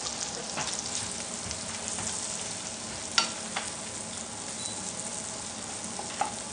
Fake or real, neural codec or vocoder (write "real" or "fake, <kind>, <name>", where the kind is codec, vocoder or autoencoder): real